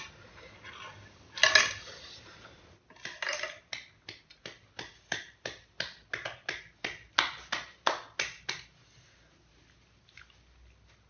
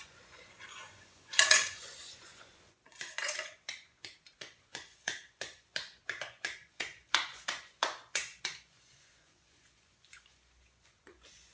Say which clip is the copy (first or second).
second